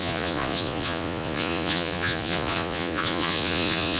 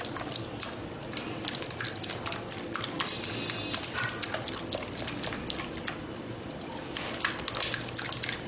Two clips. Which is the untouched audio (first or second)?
second